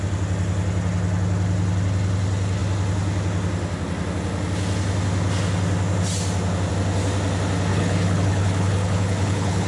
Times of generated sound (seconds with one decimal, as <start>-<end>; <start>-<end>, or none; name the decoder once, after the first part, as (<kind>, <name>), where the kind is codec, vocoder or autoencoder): 7.7-9.7 (codec, HILCodec)